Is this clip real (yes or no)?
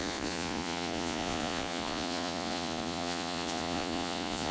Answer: no